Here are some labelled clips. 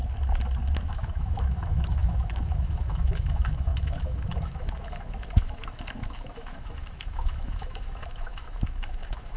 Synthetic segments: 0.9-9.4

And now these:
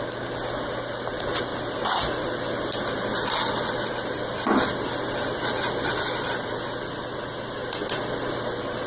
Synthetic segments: none